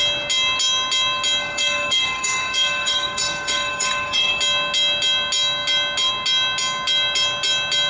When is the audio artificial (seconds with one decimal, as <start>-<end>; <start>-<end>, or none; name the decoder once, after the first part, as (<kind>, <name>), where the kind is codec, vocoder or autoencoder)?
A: 1.4-4.4 (codec, DAC)